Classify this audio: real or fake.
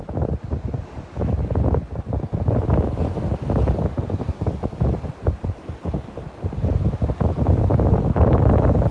real